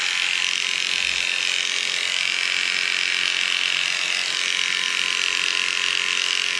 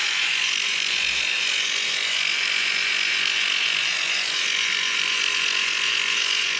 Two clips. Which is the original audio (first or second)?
first